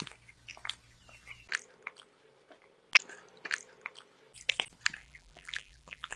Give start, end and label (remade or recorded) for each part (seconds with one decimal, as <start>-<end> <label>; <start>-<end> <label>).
0.0-5.0 recorded; 5.0-6.2 remade